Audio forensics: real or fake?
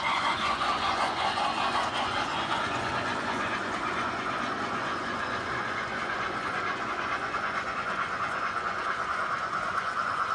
fake